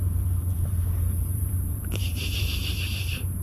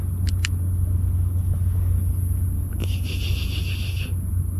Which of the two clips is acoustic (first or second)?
second